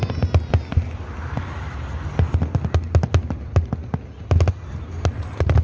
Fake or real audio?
real